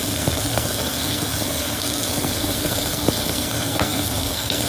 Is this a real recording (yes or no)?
no